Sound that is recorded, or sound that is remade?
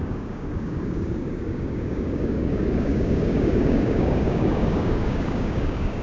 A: remade